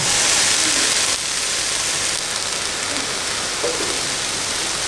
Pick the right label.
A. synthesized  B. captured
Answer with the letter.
B